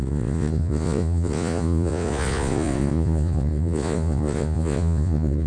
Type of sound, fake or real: fake